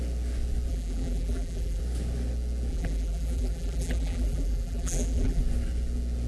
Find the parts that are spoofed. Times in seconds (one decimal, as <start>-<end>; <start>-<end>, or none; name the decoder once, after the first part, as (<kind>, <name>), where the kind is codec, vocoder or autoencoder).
0.7-1.8 (vocoder, BigVGAN v2); 2.7-5.4